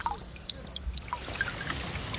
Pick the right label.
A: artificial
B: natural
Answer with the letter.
B